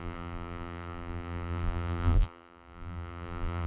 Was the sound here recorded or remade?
remade